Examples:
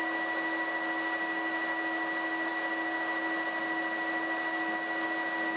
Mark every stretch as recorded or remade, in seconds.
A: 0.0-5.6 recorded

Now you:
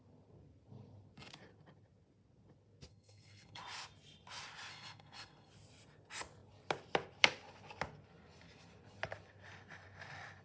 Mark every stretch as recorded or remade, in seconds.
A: 0.0-2.9 recorded; 2.9-3.6 remade; 3.6-4.7 recorded; 4.7-5.5 remade; 5.5-10.4 recorded

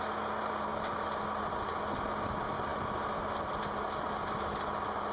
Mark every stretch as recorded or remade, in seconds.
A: 0.0-5.1 recorded

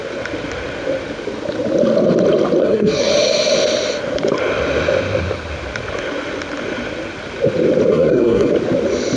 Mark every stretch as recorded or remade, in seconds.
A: 0.0-2.6 recorded; 2.6-3.1 remade; 3.1-7.9 recorded; 7.9-8.5 remade; 8.5-9.2 recorded

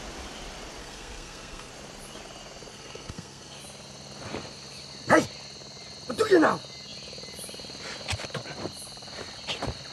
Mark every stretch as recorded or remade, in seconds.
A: 0.0-0.8 recorded; 0.8-1.7 remade; 1.7-2.7 recorded; 2.7-3.6 remade; 3.6-9.9 recorded

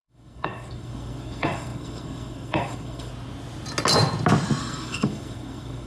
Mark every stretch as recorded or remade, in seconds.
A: 0.0-3.1 remade; 3.1-4.6 recorded; 4.6-5.9 remade

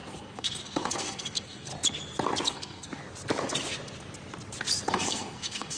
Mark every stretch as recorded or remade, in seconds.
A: 0.0-1.7 remade; 1.7-2.5 recorded; 2.5-3.0 remade; 3.0-4.9 recorded; 4.9-5.8 remade